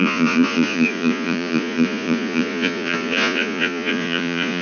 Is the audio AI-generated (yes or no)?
yes